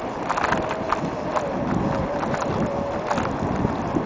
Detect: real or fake real